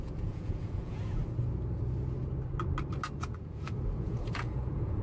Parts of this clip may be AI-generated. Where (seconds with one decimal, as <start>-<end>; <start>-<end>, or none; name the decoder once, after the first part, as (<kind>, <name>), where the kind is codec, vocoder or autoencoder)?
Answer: 0.0-1.2 (vocoder, Vocos); 3.2-5.0